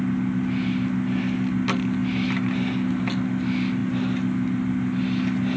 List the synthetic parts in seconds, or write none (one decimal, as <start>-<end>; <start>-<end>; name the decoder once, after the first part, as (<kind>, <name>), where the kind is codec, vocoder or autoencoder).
none

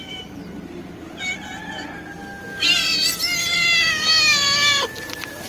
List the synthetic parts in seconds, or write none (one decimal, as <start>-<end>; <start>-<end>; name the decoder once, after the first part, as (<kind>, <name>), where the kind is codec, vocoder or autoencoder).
none